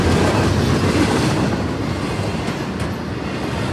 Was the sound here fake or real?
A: real